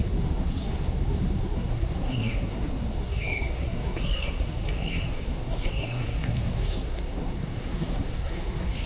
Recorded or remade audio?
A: remade